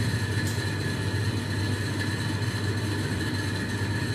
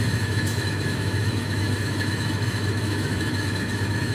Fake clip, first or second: second